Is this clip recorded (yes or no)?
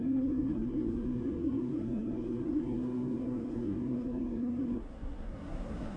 no